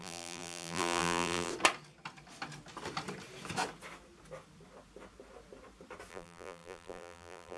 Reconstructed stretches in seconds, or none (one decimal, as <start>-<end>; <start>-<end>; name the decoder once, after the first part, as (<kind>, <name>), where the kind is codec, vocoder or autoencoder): 0.0-1.5 (vocoder, BigVGAN v2); 6.1-7.6